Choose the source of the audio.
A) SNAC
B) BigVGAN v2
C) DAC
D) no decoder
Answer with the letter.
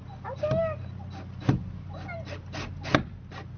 D